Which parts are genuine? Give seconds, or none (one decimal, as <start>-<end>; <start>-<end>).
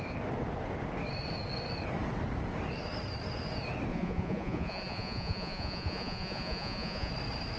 0.0-3.9; 7.1-7.6